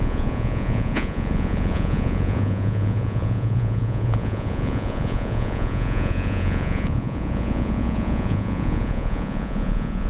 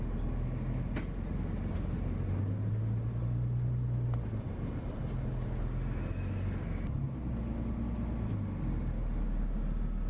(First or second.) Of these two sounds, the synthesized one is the first